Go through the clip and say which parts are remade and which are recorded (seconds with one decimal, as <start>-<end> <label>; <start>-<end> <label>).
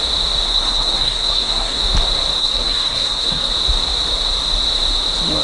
0.0-0.5 recorded; 0.5-1.8 remade; 1.8-2.4 recorded; 2.4-3.5 remade; 3.5-5.4 recorded